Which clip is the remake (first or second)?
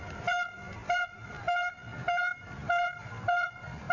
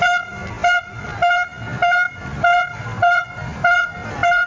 first